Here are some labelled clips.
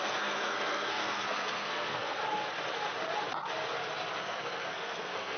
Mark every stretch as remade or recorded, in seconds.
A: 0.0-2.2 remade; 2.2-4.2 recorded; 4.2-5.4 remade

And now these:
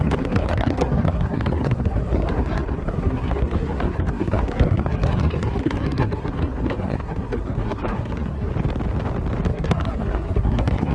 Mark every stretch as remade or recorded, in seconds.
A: 0.0-8.5 remade; 8.5-9.5 recorded; 9.5-10.9 remade

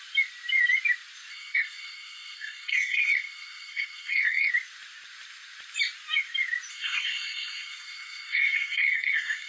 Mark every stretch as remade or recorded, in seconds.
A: 0.0-1.3 recorded; 1.3-4.5 remade; 4.5-6.7 recorded; 6.7-9.5 remade

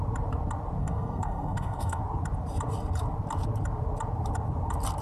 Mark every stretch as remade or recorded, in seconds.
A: 0.0-0.8 recorded; 0.8-2.0 remade; 2.0-5.0 recorded

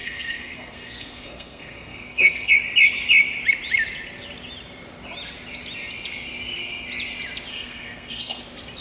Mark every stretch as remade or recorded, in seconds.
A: 0.0-2.5 remade; 2.5-7.5 recorded; 7.5-8.4 remade; 8.4-8.8 recorded

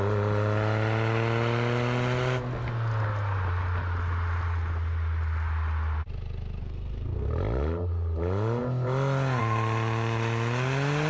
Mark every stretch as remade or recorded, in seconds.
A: 0.0-6.6 recorded; 6.6-7.3 remade; 7.3-11.1 recorded

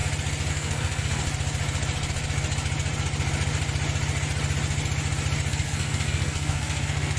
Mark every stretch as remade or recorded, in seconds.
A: 0.0-0.5 recorded; 0.5-1.2 remade; 1.2-5.5 recorded; 5.5-7.2 remade

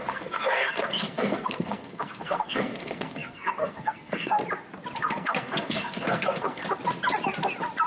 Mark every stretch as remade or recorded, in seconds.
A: 0.0-4.4 remade; 4.4-5.0 recorded; 5.0-6.6 remade; 6.6-7.9 recorded